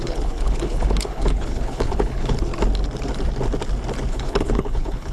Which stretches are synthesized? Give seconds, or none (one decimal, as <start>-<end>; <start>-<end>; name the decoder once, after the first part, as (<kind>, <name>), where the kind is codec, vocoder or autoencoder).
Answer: 0.0-2.5 (codec, HILCodec); 4.1-5.1